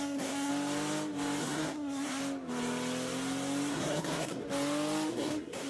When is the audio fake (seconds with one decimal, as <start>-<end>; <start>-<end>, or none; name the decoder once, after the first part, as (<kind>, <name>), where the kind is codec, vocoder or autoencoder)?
0.0-0.5 (codec, SNAC); 1.4-2.2; 3.7-4.4; 5.1-5.7